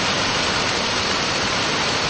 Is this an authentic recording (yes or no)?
yes